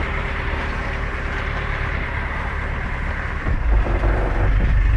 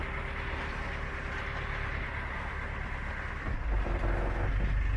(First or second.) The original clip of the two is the second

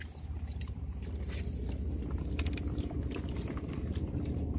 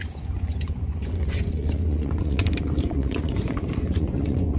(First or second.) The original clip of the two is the first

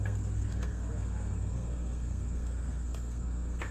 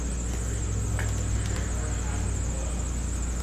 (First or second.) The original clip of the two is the second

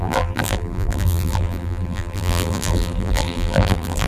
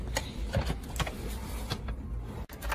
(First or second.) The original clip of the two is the second